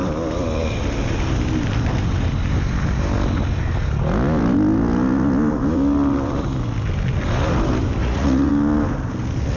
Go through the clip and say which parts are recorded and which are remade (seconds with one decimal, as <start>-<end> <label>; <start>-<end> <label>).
0.0-8.0 recorded; 8.0-8.5 remade; 8.5-9.6 recorded